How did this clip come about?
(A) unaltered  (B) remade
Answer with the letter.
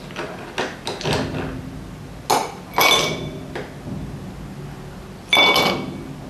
A